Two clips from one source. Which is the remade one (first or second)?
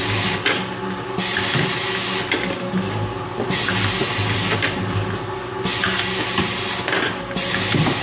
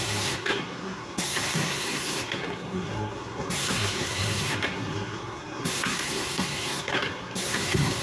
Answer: second